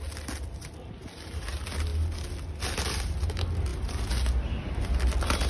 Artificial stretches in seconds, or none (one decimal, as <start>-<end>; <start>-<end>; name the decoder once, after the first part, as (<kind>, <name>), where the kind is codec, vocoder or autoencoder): none